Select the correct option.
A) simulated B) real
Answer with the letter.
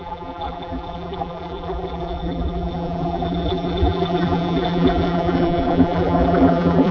A